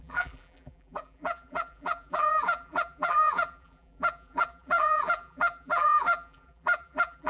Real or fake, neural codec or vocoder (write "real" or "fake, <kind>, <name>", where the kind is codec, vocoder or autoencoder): fake, vocoder, BigVGAN v2